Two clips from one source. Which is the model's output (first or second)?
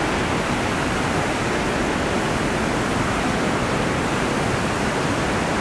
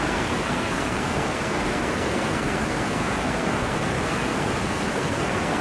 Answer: second